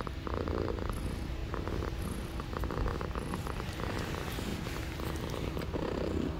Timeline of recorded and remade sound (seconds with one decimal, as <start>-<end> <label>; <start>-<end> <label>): 0.0-6.4 recorded